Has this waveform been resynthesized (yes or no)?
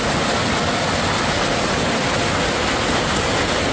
no